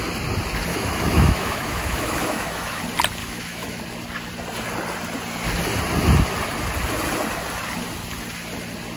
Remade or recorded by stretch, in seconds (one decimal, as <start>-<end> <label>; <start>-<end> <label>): 0.0-0.7 recorded; 0.7-2.8 remade; 2.8-3.2 recorded; 3.2-3.8 remade; 3.8-9.0 recorded